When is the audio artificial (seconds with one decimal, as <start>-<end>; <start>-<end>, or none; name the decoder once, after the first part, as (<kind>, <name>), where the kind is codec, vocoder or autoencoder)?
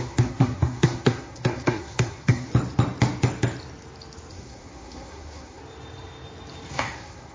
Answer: 0.0-2.5 (codec, SNAC); 4.3-5.6; 6.7-7.3